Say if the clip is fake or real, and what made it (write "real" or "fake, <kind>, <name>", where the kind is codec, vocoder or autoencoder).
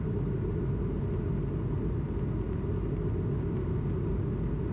real